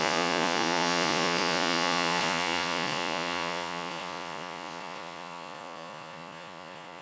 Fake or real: fake